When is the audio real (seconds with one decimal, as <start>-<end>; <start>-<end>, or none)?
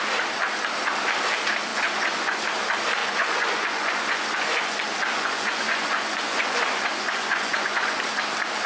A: 0.0-1.7; 2.4-3.0; 8.0-8.7